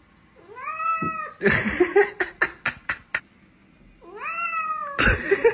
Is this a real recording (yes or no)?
yes